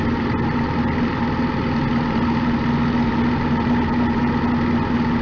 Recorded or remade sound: recorded